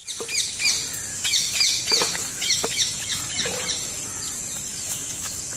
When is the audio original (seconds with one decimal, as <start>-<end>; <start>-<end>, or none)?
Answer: 0.0-1.1; 3.2-4.7